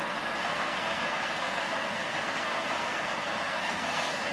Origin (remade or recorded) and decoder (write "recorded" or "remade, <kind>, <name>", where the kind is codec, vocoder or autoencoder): remade, codec, SNAC